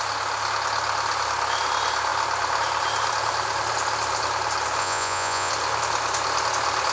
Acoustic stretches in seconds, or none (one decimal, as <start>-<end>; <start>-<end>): 0.0-4.8; 5.5-6.9